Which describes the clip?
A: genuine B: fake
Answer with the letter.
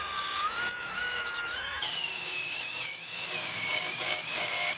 B